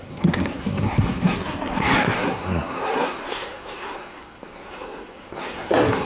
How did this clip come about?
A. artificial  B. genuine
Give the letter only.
A